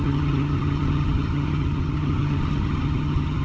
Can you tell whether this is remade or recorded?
remade